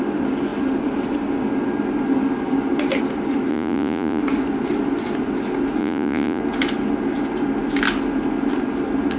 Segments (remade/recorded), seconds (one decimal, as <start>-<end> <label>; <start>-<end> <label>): 0.0-3.5 recorded; 3.5-4.2 remade; 4.2-5.8 recorded; 5.8-6.4 remade; 6.4-9.2 recorded